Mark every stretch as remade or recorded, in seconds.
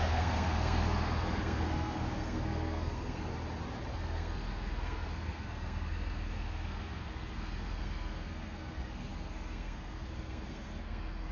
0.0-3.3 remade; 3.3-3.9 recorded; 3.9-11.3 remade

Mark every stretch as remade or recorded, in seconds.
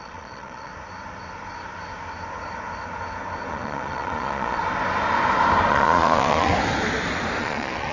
0.0-0.7 remade; 0.7-3.5 recorded; 3.5-4.6 remade; 4.6-5.7 recorded; 5.7-6.5 remade; 6.5-7.4 recorded; 7.4-7.9 remade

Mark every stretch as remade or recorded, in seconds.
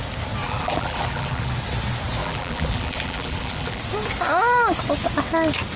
0.0-0.4 recorded; 0.4-1.5 remade; 1.5-2.2 recorded; 2.2-3.8 remade; 3.8-5.8 recorded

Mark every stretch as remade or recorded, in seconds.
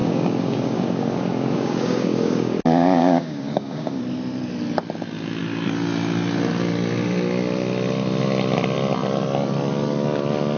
0.0-4.0 remade; 4.0-10.6 recorded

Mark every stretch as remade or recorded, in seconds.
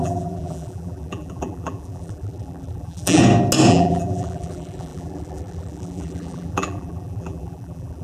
0.0-3.2 remade; 3.2-3.7 recorded; 3.7-8.0 remade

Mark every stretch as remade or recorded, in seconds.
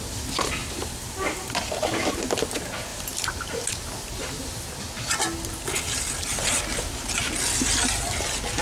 0.0-0.6 recorded; 0.6-1.6 remade; 1.6-2.9 recorded; 2.9-3.9 remade; 3.9-8.6 recorded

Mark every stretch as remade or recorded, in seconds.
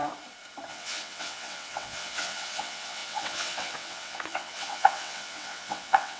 0.0-0.7 recorded; 0.7-6.2 remade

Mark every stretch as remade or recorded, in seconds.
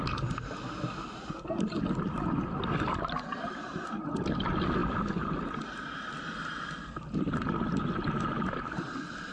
0.0-9.3 recorded